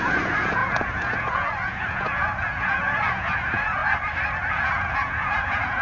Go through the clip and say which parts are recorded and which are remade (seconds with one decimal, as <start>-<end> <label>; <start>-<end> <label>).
0.0-3.8 remade; 3.8-4.5 recorded; 4.5-5.8 remade